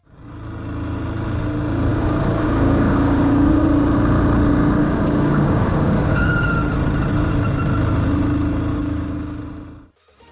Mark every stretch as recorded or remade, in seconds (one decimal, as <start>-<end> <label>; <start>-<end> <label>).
0.0-1.9 recorded; 1.9-3.6 remade; 3.6-4.8 recorded; 4.8-6.3 remade; 6.3-8.7 recorded; 8.7-9.4 remade; 9.4-10.3 recorded